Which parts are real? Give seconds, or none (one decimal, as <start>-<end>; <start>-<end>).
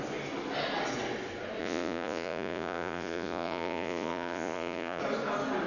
0.0-1.6; 5.0-5.7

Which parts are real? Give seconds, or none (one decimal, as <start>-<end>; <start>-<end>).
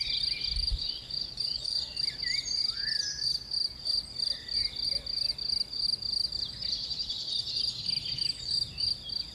0.0-0.7; 2.0-9.3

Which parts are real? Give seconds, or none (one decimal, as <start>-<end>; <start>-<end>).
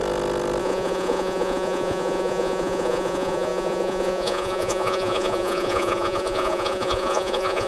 0.0-0.6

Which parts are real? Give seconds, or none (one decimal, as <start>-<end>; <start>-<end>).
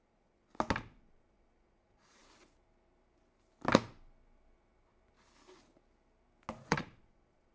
0.5-1.0; 2.2-6.6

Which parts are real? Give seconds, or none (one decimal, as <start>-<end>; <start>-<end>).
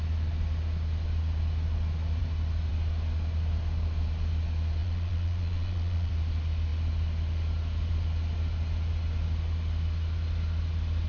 0.0-4.8; 6.1-11.1